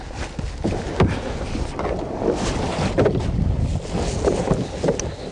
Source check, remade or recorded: recorded